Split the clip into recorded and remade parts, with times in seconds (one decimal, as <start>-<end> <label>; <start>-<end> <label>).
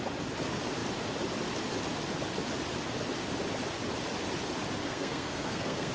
0.0-4.8 recorded; 4.8-5.9 remade